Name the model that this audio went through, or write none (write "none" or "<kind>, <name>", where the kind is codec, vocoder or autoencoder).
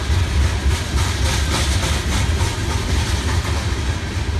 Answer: none